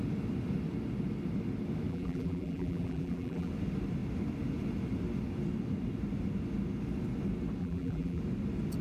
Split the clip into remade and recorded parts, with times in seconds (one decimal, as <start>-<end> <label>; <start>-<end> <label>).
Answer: 0.0-1.9 recorded; 1.9-3.5 remade; 3.5-7.6 recorded; 7.6-8.2 remade; 8.2-8.8 recorded